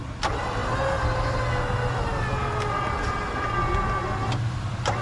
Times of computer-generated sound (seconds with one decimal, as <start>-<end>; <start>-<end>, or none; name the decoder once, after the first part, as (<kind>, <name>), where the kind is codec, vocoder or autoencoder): none